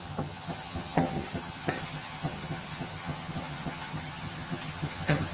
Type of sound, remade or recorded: remade